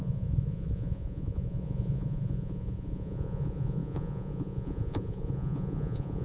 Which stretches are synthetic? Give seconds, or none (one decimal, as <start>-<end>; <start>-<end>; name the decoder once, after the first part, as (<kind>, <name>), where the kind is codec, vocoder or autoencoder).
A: 0.0-6.2 (vocoder, Vocos)